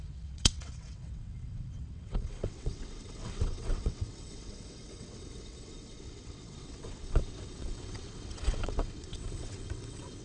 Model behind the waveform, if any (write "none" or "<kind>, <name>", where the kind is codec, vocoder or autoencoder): vocoder, WaveNeXt